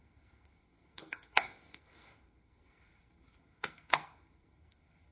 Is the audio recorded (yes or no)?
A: no